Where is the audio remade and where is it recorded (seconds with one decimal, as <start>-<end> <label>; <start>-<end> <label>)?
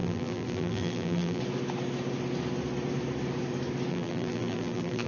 0.0-1.4 remade; 1.4-3.9 recorded; 3.9-5.1 remade